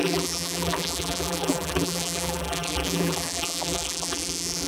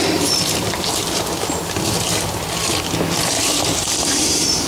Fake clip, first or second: first